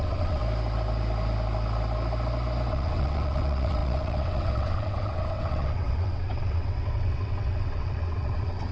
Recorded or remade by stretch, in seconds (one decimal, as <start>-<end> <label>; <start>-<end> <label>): 0.0-0.4 remade; 0.4-2.7 recorded; 2.7-8.7 remade